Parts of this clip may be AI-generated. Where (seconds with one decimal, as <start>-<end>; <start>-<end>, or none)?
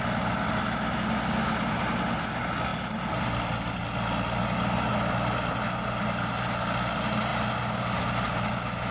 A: none